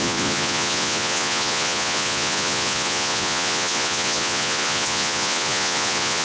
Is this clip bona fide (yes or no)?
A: no